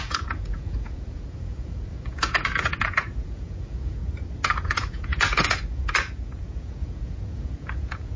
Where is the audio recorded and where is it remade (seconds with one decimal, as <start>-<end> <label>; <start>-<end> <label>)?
0.0-4.0 remade; 4.0-4.6 recorded; 4.6-8.2 remade